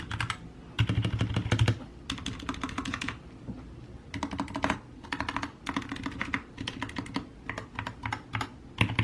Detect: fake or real real